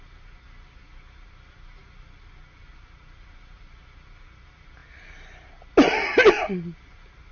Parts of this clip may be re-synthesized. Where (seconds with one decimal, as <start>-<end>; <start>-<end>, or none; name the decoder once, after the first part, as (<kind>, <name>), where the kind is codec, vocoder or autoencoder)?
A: none